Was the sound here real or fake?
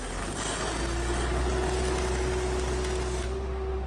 real